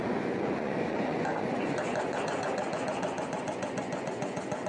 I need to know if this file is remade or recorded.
remade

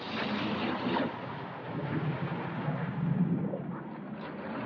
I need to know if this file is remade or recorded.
recorded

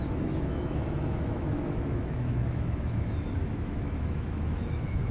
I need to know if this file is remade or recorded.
remade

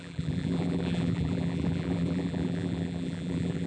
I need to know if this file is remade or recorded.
remade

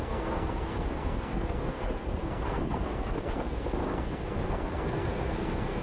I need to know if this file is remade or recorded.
remade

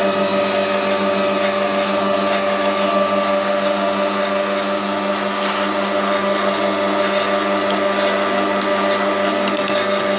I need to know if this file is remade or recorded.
recorded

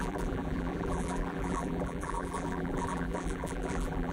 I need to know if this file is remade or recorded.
remade